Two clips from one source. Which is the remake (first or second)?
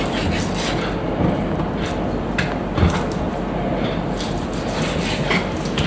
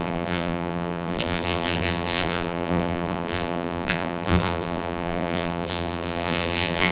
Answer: second